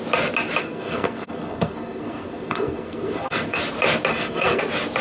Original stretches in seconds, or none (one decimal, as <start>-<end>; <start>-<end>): 0.0-0.6; 3.6-4.1; 4.6-5.0